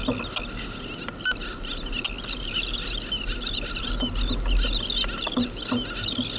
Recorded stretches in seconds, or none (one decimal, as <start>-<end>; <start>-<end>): 0.0-6.4